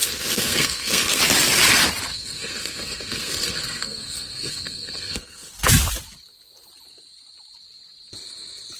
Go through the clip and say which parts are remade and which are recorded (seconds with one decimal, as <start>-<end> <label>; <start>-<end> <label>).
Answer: 0.0-1.2 remade; 1.2-2.1 recorded; 2.1-5.5 remade; 5.5-8.8 recorded